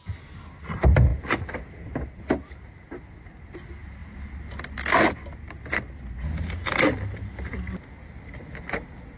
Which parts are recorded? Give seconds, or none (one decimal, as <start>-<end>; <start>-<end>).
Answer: 0.0-9.2